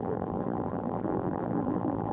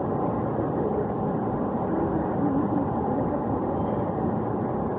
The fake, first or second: first